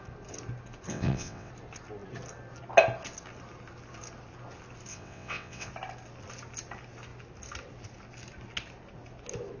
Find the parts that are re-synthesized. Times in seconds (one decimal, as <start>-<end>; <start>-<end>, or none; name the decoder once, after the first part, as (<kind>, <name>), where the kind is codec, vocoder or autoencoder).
0.9-1.5 (vocoder, WaveNeXt); 4.9-5.7